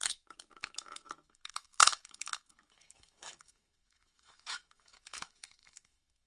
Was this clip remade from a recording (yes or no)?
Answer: yes